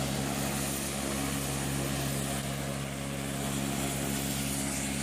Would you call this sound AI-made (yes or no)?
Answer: no